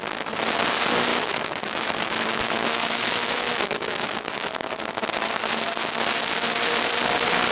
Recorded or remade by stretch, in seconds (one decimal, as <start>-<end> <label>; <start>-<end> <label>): 0.0-1.1 recorded; 1.1-4.3 remade; 4.3-7.5 recorded